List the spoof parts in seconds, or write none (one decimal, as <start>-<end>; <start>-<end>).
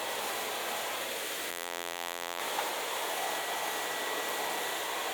1.5-2.4